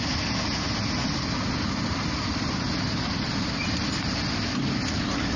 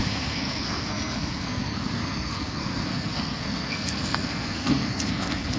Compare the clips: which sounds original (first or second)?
first